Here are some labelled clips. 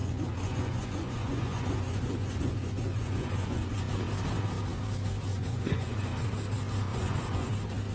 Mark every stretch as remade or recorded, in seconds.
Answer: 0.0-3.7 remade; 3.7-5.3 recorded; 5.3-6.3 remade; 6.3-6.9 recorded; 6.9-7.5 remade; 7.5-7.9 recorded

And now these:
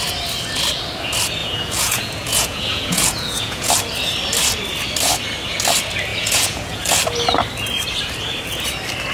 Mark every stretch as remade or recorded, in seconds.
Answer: 0.0-1.4 recorded; 1.4-3.7 remade; 3.7-6.1 recorded; 6.1-6.8 remade; 6.8-9.1 recorded

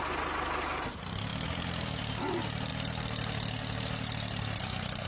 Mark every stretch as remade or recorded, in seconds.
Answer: 0.0-5.1 recorded

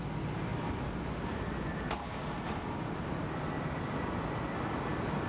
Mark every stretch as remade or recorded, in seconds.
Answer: 0.0-5.3 recorded

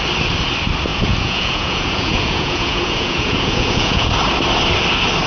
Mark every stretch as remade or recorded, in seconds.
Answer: 0.0-0.9 recorded; 0.9-4.1 remade; 4.1-5.3 recorded

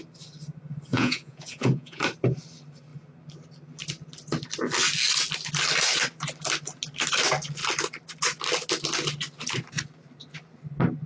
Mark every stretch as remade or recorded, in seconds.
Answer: 0.0-0.9 recorded; 0.9-2.0 remade; 2.0-11.1 recorded